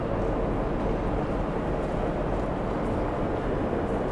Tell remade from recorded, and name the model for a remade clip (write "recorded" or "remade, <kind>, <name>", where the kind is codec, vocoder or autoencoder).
recorded